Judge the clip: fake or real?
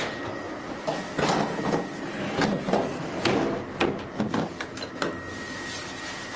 real